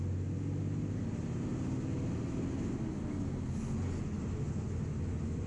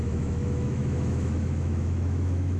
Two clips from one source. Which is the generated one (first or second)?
second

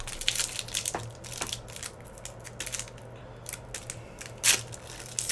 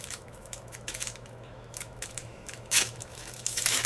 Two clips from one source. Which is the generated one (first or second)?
second